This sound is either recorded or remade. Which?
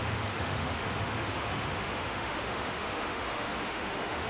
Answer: remade